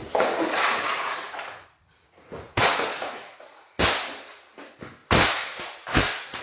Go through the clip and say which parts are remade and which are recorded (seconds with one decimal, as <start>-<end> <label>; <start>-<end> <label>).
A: 0.0-3.8 remade; 3.8-6.4 recorded